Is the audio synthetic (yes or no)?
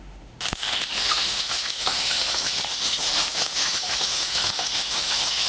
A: yes